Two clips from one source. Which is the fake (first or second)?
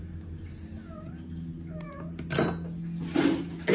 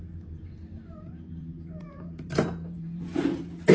second